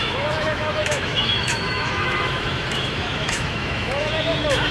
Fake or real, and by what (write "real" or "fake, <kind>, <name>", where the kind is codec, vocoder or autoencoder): fake, autoencoder, DAC-VAE